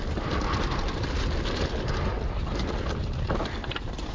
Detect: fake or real real